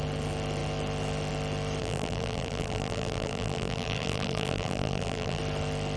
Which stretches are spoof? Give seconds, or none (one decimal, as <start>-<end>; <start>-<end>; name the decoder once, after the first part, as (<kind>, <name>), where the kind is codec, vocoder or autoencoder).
1.8-5.4 (vocoder, BigVGAN v2)